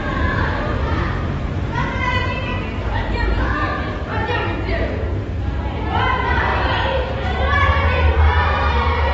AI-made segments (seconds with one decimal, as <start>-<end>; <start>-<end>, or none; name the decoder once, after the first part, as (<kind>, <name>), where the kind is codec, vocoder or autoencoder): 0.0-6.5 (vocoder, BigVGAN v2); 8.1-9.1